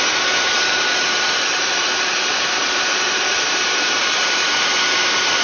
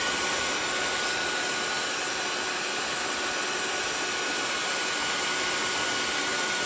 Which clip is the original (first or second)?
second